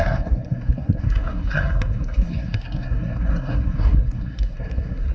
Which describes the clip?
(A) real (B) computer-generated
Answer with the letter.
B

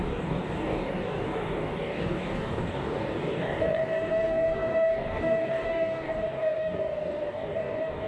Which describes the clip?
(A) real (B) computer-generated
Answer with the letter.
B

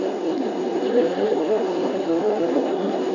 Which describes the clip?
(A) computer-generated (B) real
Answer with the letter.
A